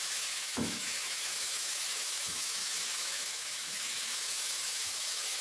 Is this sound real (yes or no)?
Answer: no